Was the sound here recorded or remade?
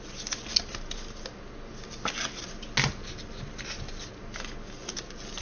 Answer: recorded